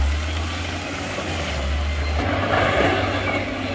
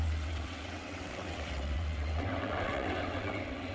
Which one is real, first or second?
first